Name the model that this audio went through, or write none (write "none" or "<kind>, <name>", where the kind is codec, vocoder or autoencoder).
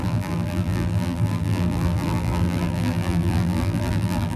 vocoder, BigVGAN v2